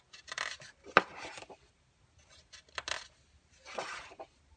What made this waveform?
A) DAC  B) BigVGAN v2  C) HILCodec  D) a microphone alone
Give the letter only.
D